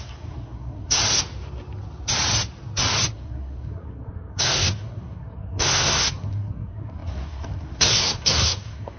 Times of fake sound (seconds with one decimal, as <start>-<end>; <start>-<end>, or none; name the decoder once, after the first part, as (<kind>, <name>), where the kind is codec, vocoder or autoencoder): 0.0-1.0 (codec, SNAC); 3.1-9.0